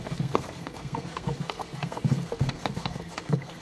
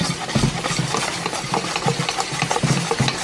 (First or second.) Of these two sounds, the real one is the second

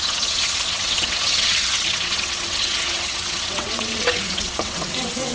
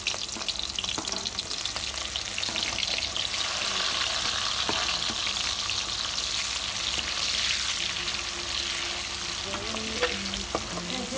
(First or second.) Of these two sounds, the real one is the second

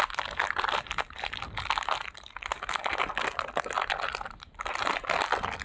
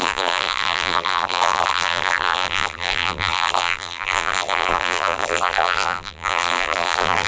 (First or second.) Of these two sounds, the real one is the first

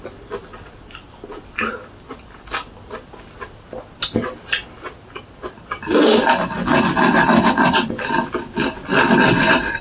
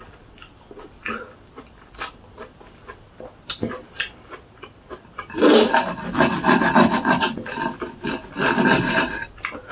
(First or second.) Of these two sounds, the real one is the first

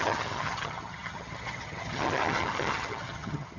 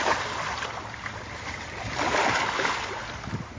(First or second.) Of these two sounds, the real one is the second